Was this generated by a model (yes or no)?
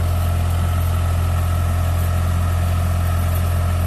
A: no